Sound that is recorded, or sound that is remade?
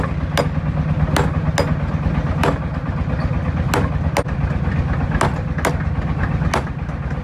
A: recorded